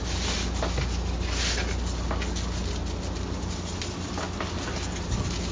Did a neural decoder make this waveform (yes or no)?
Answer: no